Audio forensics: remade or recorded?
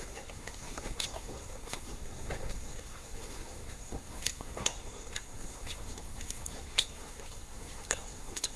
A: remade